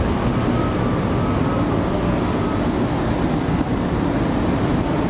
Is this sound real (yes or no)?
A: yes